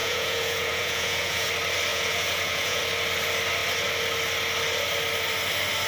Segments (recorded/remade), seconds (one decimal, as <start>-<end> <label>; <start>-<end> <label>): 0.0-1.5 remade; 1.5-1.9 recorded; 1.9-2.8 remade; 2.8-5.9 recorded